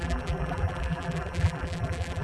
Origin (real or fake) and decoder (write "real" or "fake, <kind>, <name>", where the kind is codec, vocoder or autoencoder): fake, vocoder, BigVGAN v2